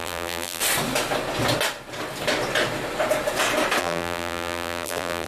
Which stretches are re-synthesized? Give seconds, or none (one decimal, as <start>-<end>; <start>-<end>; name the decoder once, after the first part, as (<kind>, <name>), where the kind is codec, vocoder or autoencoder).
0.0-0.6 (vocoder, BigVGAN v2); 3.8-5.3